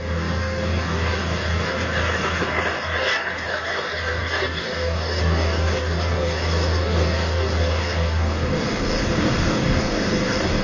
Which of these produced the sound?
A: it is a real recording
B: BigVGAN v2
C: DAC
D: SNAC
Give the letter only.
C